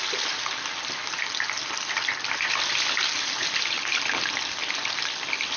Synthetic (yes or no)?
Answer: no